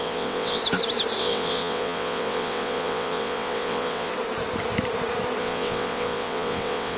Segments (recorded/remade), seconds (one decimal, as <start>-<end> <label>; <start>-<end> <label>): 0.0-0.6 remade; 0.6-1.2 recorded; 1.2-4.1 remade; 4.1-5.4 recorded; 5.4-7.0 remade